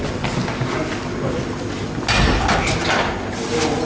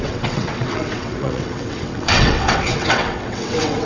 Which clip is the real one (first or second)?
first